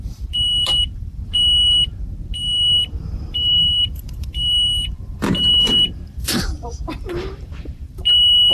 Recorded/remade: remade